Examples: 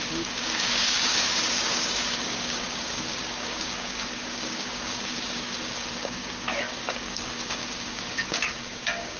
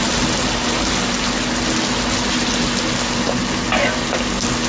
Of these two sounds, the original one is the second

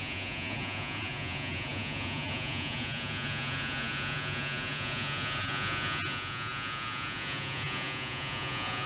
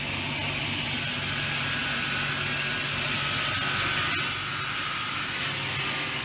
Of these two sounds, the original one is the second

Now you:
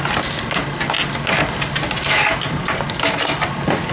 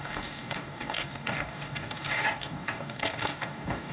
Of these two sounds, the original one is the first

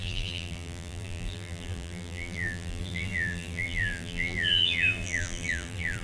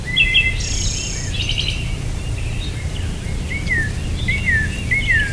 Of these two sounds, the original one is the second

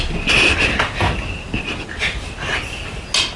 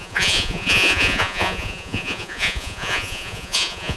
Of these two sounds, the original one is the first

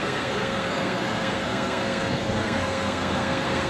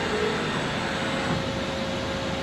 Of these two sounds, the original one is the second